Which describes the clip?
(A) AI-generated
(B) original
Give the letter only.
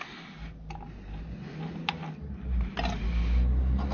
B